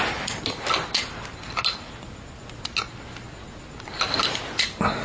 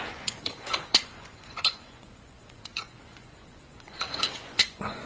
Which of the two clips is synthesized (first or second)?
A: second